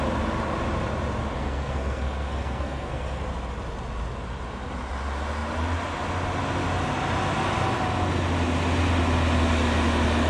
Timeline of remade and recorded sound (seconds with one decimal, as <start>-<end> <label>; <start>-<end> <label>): 0.0-1.4 recorded; 1.4-3.2 remade; 3.2-10.3 recorded